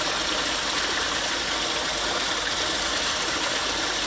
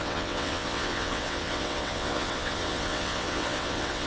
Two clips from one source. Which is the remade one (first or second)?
second